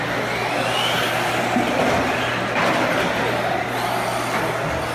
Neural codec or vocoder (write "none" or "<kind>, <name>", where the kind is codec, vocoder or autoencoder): none